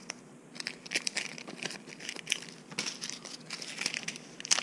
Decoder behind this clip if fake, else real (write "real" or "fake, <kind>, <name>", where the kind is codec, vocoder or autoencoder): real